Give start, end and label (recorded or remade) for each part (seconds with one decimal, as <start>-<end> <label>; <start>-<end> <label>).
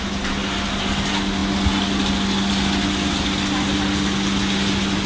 0.0-5.1 recorded